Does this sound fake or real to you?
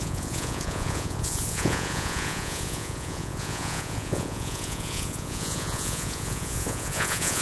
fake